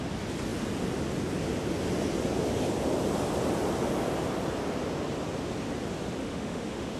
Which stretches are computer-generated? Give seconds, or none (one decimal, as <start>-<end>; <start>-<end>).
6.2-7.0